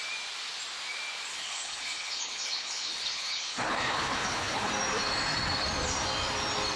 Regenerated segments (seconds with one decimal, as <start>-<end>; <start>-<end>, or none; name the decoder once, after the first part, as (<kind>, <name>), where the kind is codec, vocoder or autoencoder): 1.3-4.7 (codec, HILCodec)